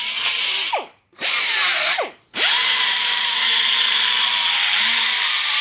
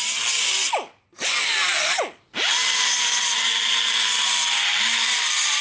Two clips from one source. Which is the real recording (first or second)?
second